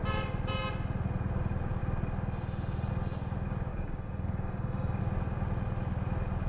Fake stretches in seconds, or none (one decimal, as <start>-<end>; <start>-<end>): 3.7-5.0